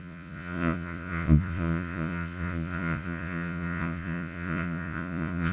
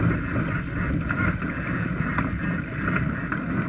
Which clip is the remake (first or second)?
first